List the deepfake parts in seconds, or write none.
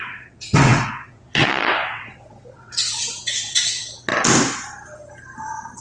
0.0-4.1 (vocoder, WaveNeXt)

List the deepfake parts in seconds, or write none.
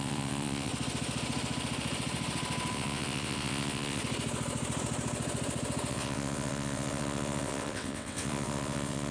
0.0-0.7 (vocoder, WaveNeXt); 2.7-4.0; 5.9-9.1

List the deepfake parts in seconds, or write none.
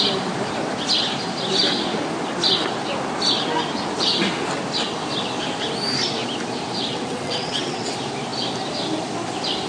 6.9-7.9 (vocoder, WaveNeXt)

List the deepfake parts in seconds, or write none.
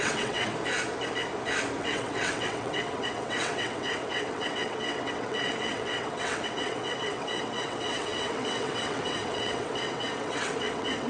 0.0-0.5 (vocoder, WaveNeXt); 1.8-11.1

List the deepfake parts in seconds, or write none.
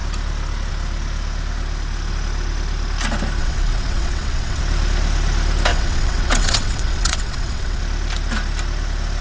3.4-4.6 (vocoder, WaveNeXt); 5.7-7.8